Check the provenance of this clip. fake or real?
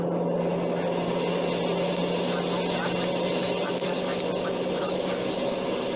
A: real